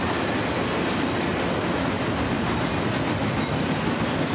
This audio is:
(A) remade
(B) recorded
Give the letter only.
B